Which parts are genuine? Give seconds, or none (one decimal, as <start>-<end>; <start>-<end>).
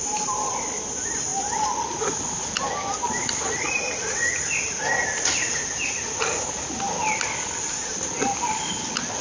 0.0-9.2